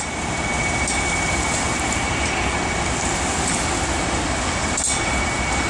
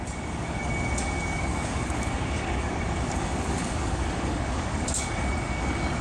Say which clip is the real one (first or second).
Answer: first